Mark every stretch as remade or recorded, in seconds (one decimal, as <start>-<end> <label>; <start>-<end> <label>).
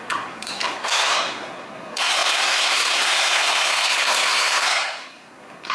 0.0-5.7 remade